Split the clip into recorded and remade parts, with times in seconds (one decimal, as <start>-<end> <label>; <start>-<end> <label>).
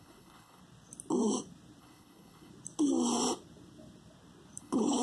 0.0-0.6 remade; 0.6-1.8 recorded; 1.8-2.5 remade; 2.5-4.6 recorded; 4.6-5.0 remade